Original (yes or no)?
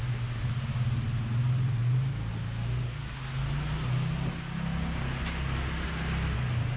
yes